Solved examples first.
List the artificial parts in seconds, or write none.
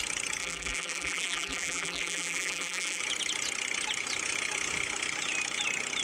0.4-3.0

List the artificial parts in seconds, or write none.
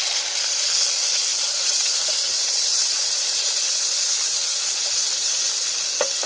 1.3-4.1; 4.5-5.5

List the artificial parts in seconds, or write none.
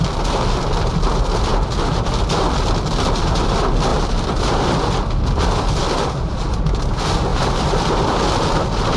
3.9-4.5; 7.3-8.2